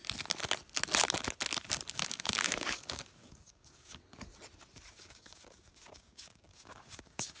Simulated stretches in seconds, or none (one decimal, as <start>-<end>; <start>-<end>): 1.9-4.0; 4.9-7.4